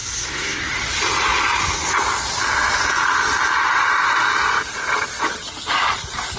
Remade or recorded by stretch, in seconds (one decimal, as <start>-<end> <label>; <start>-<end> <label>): 0.0-0.6 remade; 0.6-6.4 recorded

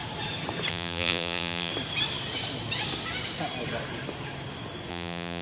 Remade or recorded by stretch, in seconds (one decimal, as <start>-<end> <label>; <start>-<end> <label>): 0.0-0.7 recorded; 0.7-1.7 remade; 1.7-4.9 recorded; 4.9-5.4 remade

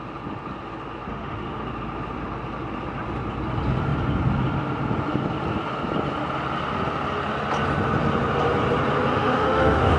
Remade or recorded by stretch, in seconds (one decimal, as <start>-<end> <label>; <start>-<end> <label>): 0.0-1.1 recorded; 1.1-1.6 remade; 1.6-9.1 recorded; 9.1-10.0 remade

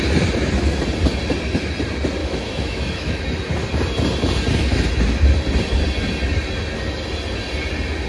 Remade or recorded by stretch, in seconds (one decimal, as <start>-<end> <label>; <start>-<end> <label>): 0.0-2.2 recorded; 2.2-3.2 remade; 3.2-8.1 recorded

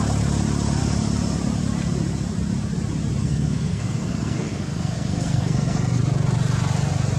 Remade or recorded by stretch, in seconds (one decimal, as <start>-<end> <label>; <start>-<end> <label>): 0.0-3.2 recorded; 3.2-6.0 remade; 6.0-7.2 recorded

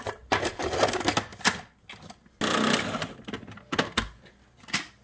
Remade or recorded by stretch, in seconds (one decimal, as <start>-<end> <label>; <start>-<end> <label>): 0.0-5.0 recorded

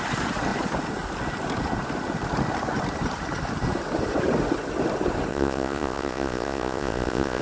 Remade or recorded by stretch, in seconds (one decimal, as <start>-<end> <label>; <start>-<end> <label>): 0.0-5.3 recorded; 5.3-7.4 remade